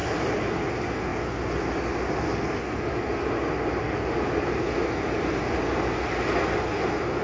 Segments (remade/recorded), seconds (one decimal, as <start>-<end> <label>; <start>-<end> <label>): 0.0-0.5 remade; 0.5-7.2 recorded